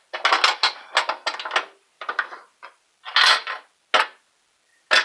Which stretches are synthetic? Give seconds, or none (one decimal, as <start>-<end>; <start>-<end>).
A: none